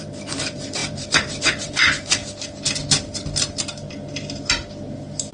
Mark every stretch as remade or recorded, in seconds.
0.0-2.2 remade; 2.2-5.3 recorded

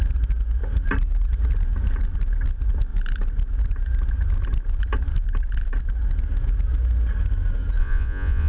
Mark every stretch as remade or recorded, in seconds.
0.0-7.8 recorded; 7.8-8.5 remade

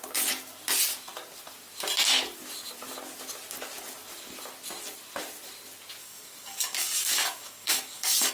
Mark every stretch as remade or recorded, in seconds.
0.0-6.0 recorded; 6.0-8.3 remade

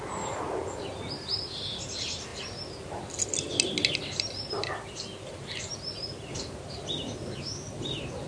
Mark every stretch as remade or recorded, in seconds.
0.0-8.3 recorded

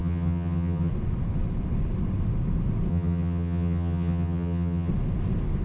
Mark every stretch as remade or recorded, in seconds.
0.0-0.9 remade; 0.9-2.9 recorded; 2.9-4.9 remade; 4.9-5.6 recorded

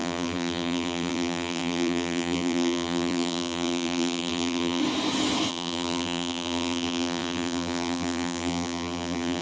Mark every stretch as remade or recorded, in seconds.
0.0-4.8 remade; 4.8-5.5 recorded; 5.5-9.4 remade